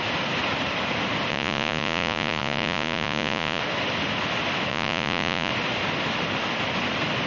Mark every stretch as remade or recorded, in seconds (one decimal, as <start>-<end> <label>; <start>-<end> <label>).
0.0-1.3 recorded; 1.3-3.6 remade; 3.6-4.7 recorded; 4.7-5.5 remade; 5.5-7.3 recorded